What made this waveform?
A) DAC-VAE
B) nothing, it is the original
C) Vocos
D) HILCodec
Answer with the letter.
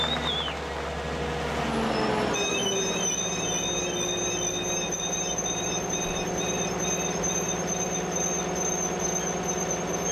B